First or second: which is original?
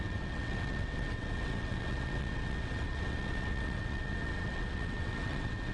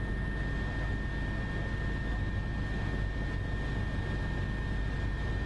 second